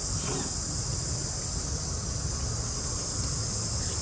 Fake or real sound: real